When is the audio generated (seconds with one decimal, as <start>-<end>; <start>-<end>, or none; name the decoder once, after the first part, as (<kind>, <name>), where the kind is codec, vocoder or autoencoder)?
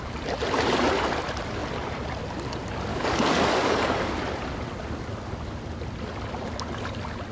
2.9-4.1 (codec, DAC)